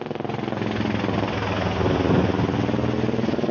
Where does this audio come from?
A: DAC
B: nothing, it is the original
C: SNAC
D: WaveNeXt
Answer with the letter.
B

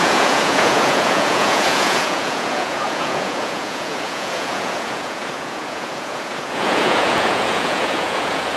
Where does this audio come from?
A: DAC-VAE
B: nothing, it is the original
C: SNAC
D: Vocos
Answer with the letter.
D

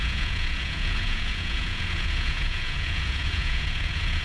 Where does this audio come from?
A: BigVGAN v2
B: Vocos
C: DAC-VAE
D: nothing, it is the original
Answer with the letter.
B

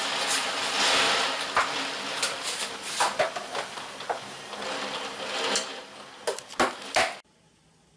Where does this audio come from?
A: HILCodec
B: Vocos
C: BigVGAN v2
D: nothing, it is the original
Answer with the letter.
D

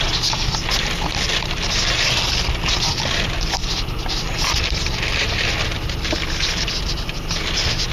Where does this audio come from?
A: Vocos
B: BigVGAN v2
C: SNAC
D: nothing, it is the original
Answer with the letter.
D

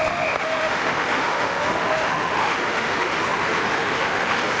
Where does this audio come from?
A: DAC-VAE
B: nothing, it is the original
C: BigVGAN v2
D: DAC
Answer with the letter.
A